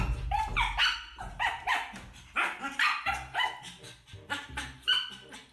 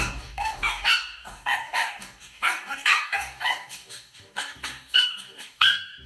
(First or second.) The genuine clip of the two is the first